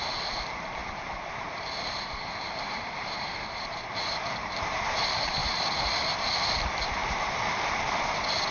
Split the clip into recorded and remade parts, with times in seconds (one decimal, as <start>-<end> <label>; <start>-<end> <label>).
0.0-5.4 remade; 5.4-6.6 recorded; 6.6-7.0 remade; 7.0-8.5 recorded